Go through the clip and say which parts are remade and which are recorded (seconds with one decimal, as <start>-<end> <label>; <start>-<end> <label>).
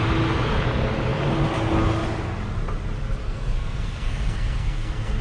0.0-3.2 recorded; 3.2-5.2 remade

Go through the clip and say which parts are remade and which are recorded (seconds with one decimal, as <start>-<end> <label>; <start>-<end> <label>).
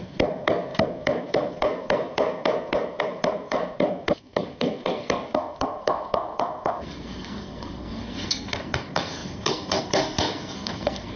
0.0-11.2 remade